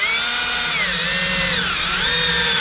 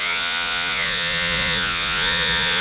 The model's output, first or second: second